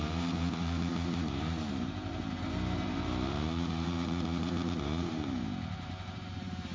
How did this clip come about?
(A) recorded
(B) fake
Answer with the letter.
B